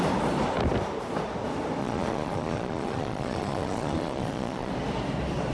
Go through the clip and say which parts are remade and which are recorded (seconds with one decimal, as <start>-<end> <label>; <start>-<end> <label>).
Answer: 0.0-1.8 recorded; 1.8-4.7 remade; 4.7-5.5 recorded